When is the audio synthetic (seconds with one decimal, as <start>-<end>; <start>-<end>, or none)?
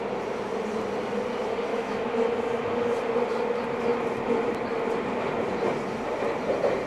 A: 1.7-2.3